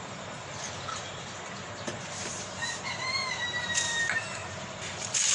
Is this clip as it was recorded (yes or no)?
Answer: no